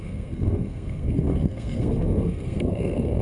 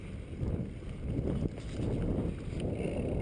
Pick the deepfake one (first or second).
first